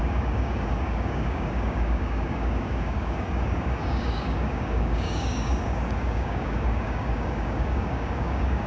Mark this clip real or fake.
fake